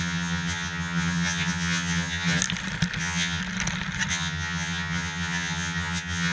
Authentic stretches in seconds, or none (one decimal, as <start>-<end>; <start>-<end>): 2.4-3.0; 3.4-4.1